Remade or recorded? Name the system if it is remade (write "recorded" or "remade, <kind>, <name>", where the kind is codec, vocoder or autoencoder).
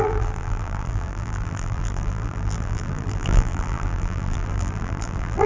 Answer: remade, vocoder, BigVGAN v2